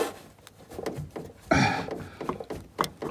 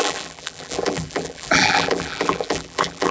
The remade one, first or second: second